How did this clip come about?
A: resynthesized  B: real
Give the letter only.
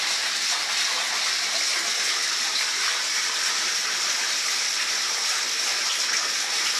B